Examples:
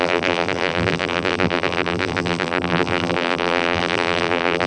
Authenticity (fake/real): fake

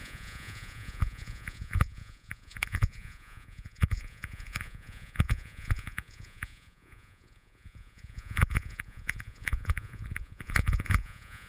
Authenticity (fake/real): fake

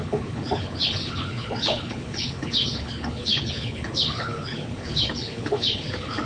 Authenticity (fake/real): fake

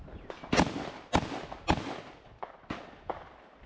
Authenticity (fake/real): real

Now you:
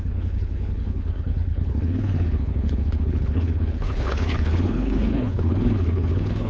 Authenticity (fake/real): fake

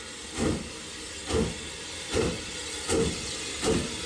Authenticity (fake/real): real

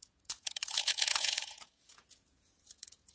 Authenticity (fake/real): fake